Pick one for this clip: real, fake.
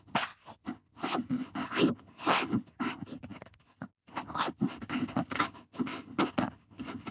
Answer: real